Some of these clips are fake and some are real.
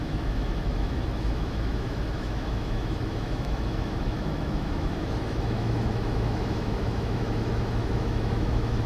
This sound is fake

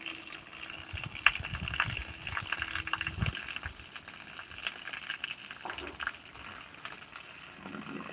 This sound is real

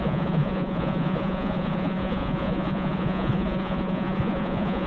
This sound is fake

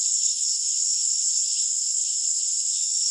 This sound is fake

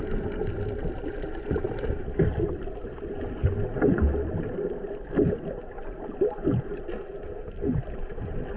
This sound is real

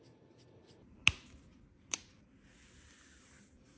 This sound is real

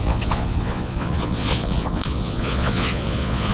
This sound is fake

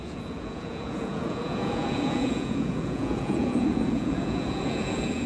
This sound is fake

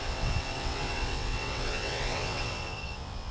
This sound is fake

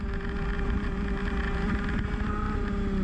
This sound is real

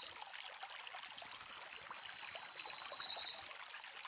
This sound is real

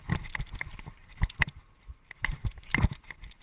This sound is real